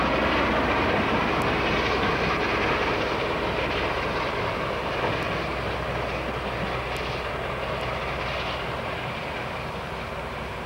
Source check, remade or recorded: recorded